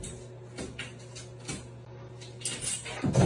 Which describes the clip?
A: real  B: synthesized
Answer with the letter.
A